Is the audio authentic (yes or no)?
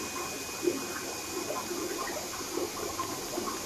yes